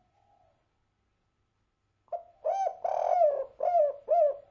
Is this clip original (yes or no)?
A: yes